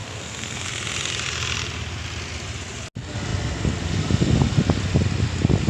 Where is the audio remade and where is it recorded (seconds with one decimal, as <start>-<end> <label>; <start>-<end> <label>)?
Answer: 0.0-0.7 remade; 0.7-5.7 recorded